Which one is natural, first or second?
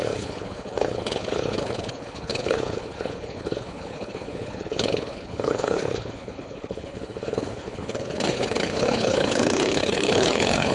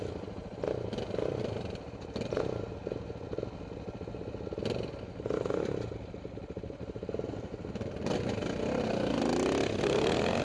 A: second